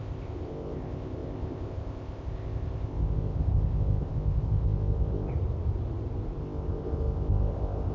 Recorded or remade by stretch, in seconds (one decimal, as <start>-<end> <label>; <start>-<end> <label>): 0.0-5.3 remade; 5.3-6.4 recorded; 6.4-7.9 remade